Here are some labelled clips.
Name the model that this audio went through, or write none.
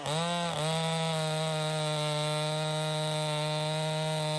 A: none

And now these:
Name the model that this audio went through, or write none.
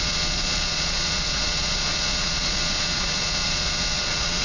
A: vocoder, Vocos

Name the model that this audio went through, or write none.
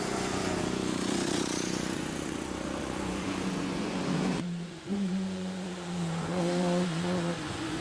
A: vocoder, Vocos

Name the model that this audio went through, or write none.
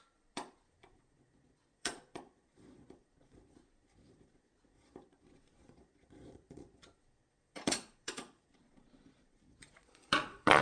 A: vocoder, Vocos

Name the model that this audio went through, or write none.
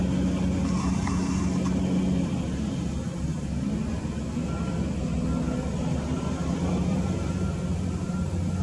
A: none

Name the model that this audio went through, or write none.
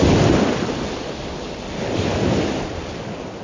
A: none